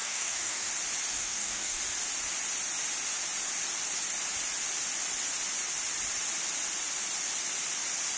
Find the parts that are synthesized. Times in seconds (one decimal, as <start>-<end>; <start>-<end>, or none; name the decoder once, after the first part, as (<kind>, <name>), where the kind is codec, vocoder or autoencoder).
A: 0.0-0.7 (codec, DAC); 1.1-1.8